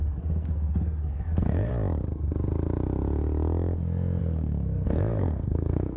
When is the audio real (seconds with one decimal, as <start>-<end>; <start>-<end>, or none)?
1.7-4.2